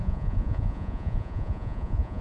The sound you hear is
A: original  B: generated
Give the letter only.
B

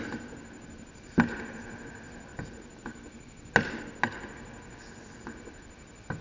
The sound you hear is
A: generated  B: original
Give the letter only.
B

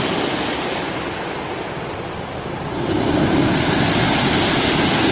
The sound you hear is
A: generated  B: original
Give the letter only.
B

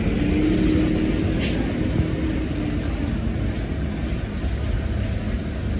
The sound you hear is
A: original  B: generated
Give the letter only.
A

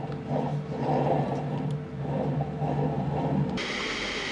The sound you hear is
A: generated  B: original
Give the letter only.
B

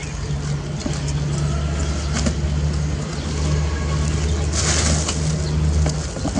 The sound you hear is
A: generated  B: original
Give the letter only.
B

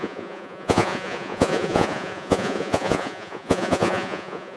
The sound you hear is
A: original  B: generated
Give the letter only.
B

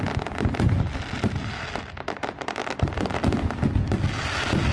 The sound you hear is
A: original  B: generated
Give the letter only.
A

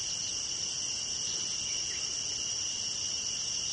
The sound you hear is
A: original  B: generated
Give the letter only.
A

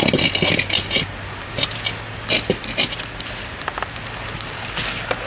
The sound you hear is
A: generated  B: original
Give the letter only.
B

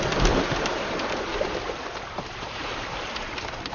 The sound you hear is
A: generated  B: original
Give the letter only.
B